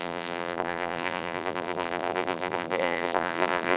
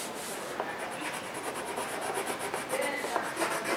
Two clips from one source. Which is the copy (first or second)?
first